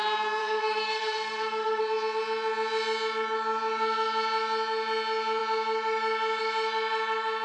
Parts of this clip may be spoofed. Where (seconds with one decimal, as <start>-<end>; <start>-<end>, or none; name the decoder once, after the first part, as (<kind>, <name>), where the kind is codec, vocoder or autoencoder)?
0.4-1.8 (codec, SNAC)